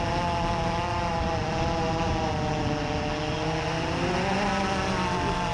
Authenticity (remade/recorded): recorded